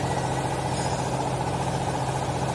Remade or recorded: recorded